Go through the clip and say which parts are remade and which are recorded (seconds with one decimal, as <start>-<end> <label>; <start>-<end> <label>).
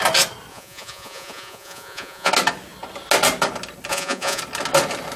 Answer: 0.0-0.5 recorded; 0.5-2.3 remade; 2.3-3.9 recorded; 3.9-4.4 remade; 4.4-5.2 recorded